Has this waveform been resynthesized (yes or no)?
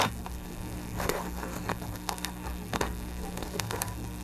yes